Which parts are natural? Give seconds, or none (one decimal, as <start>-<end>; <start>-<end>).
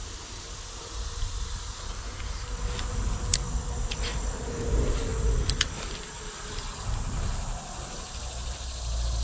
0.0-9.2